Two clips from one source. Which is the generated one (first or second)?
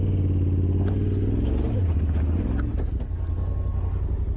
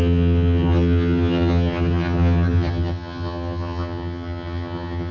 second